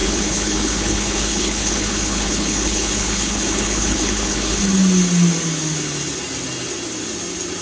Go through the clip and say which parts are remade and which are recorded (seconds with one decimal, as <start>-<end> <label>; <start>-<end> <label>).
0.0-4.6 remade; 4.6-7.6 recorded

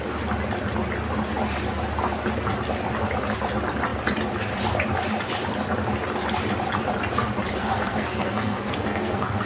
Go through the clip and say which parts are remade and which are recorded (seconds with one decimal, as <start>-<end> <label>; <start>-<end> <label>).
0.0-7.6 recorded; 7.6-9.5 remade